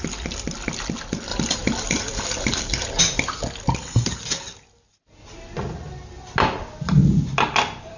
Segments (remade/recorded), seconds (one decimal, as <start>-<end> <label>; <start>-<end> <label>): 0.0-1.3 recorded; 1.3-3.0 remade; 3.0-8.0 recorded